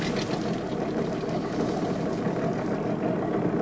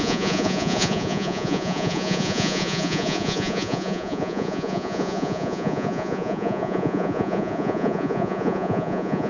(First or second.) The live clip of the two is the first